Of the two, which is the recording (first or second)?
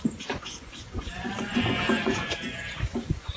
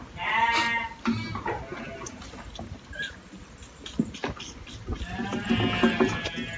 second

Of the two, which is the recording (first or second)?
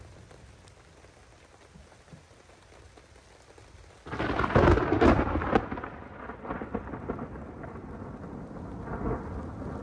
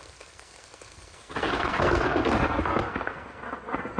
first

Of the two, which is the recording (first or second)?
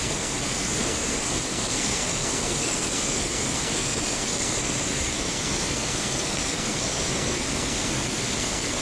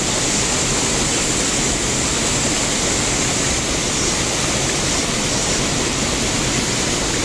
second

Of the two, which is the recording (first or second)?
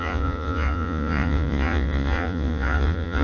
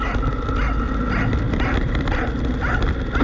second